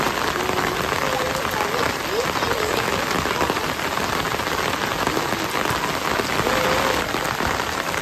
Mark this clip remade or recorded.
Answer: recorded